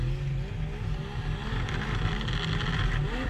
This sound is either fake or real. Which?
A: real